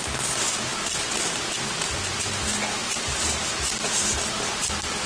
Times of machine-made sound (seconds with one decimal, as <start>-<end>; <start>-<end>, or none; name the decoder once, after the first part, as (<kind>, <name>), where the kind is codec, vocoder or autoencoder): 2.8-4.0 (vocoder, BigVGAN v2)